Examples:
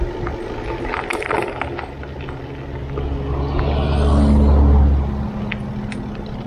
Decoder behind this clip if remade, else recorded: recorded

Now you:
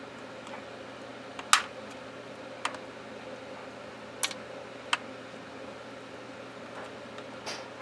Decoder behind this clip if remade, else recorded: recorded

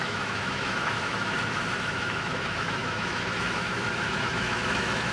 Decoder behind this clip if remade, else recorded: remade, autoencoder, DAC-VAE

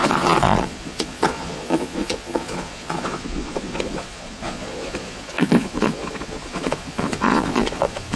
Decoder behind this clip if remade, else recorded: remade, vocoder, Vocos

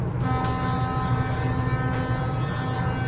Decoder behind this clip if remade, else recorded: recorded